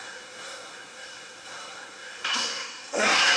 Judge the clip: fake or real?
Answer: fake